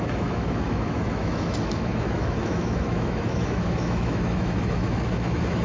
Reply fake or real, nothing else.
fake